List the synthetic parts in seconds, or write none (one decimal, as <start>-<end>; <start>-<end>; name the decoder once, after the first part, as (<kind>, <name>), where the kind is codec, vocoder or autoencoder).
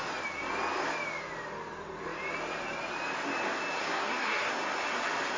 3.8-4.5 (codec, SNAC)